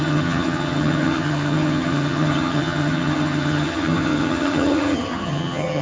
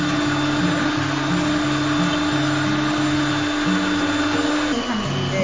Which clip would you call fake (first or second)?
first